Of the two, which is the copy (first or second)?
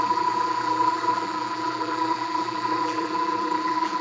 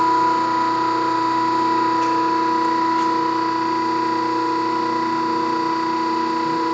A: first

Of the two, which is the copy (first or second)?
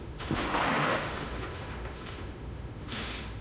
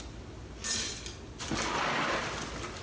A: first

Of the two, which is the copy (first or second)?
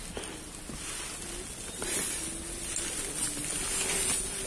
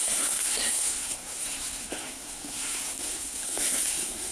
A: second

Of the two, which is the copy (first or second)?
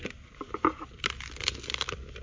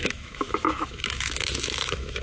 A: second